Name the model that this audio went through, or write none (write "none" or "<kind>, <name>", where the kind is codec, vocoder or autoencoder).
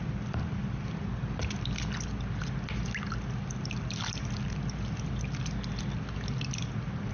none